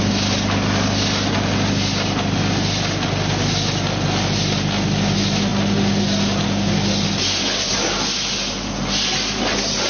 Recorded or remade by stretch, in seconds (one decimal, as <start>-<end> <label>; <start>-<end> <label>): 0.0-9.9 recorded